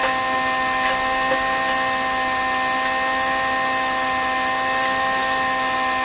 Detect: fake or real real